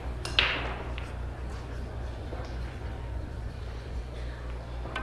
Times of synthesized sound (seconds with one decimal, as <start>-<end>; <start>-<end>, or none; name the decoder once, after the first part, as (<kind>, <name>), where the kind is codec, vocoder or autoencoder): 1.5-4.0 (vocoder, Vocos)